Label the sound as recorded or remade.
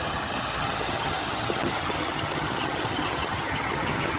remade